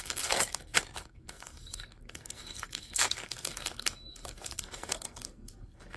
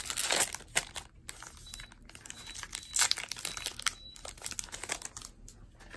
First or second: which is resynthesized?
first